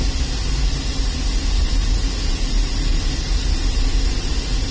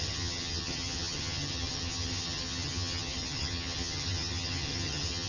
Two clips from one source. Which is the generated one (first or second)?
second